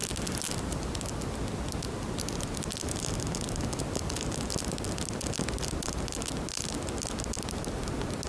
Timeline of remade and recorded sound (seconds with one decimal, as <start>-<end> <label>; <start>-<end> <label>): 0.0-8.3 recorded